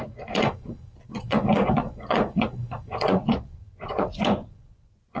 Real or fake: fake